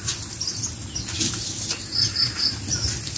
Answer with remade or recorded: recorded